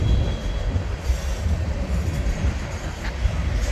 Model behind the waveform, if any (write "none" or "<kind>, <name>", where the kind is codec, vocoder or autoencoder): none